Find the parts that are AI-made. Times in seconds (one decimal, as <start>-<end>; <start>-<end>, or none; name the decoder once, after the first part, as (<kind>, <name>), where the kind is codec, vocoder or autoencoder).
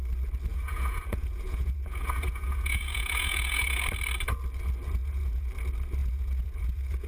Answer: 0.5-3.8 (vocoder, Vocos); 5.0-5.5; 6.0-7.1